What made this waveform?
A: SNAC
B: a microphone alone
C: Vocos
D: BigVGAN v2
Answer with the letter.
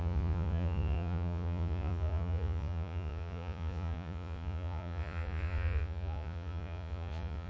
C